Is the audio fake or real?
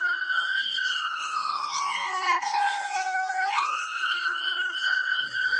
fake